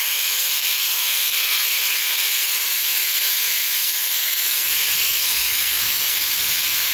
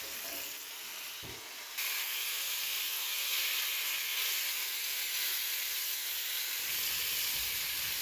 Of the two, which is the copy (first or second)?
first